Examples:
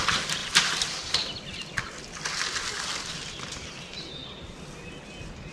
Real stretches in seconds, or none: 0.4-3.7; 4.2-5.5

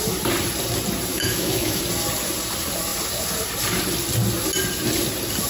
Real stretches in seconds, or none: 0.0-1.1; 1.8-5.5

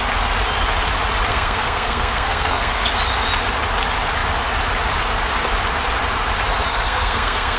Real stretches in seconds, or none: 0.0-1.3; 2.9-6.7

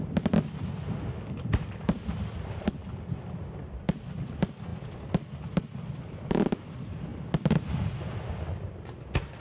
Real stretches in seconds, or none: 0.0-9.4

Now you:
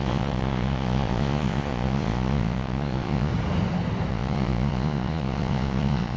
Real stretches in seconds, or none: 3.3-4.1